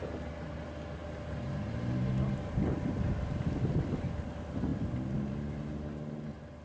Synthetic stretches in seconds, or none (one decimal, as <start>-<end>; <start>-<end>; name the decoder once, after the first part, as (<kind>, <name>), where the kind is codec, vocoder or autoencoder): none